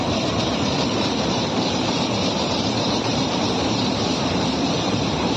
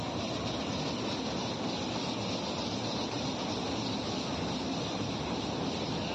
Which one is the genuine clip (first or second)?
second